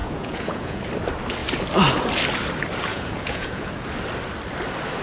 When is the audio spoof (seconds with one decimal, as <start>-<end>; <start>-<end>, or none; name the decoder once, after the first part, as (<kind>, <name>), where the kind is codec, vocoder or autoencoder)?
0.0-0.8 (vocoder, Vocos); 2.9-3.7